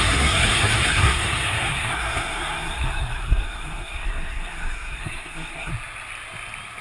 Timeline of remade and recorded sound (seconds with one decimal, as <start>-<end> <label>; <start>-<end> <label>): 0.0-5.7 remade; 5.7-6.8 recorded